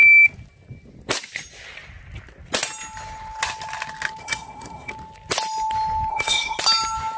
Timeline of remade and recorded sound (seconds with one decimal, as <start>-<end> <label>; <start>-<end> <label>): 0.0-4.2 recorded; 4.2-4.9 remade; 4.9-6.1 recorded; 6.1-6.6 remade; 6.6-7.2 recorded